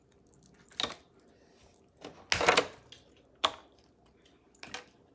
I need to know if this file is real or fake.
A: real